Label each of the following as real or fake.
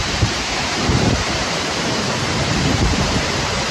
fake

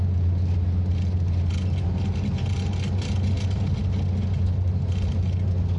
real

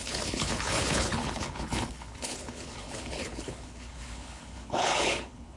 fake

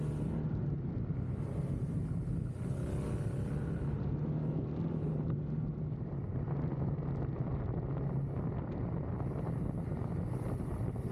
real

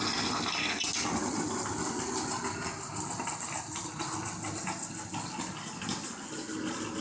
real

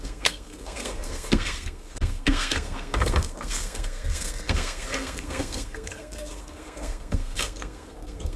fake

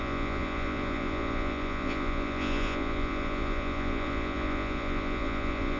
fake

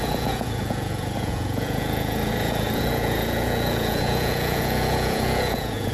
fake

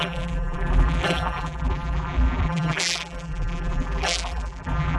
fake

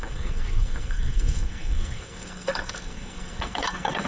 fake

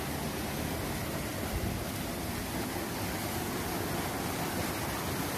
real